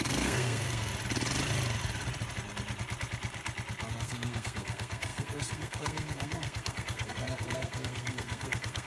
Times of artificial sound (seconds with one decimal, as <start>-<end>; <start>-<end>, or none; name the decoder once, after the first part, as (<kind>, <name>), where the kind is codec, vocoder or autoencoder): 0.0-0.9 (codec, SNAC); 3.9-8.9